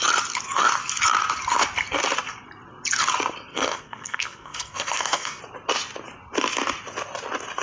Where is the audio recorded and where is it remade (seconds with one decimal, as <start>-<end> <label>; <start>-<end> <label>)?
0.0-3.5 recorded; 3.5-5.4 remade; 5.4-7.6 recorded